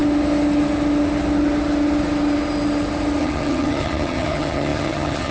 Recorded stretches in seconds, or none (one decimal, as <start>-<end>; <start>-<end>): 0.0-3.2